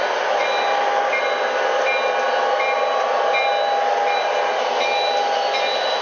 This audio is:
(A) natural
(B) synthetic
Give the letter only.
A